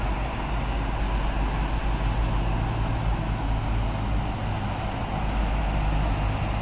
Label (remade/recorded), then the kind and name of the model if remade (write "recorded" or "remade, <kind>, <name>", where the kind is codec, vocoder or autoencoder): recorded